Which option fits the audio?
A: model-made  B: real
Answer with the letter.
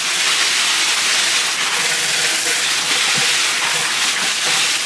B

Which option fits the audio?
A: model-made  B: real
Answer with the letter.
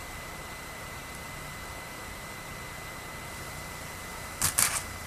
A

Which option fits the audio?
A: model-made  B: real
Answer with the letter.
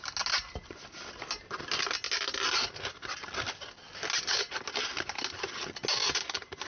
B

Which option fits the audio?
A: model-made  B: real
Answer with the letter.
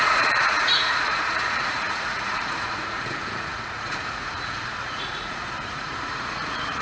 A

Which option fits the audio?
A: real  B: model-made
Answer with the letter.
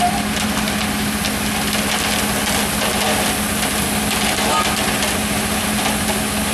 A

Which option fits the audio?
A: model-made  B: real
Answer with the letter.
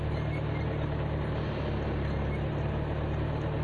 B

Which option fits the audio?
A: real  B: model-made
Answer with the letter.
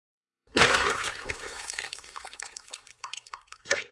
B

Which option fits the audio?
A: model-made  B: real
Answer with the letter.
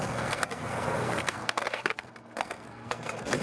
A